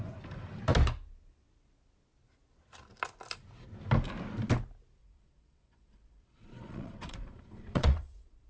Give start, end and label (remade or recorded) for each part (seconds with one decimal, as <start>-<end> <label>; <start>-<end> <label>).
0.0-5.0 recorded; 5.0-8.5 remade